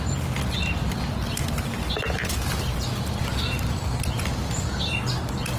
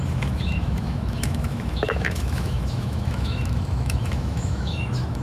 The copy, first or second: second